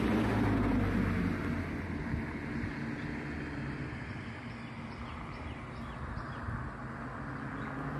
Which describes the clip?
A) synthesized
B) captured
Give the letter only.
B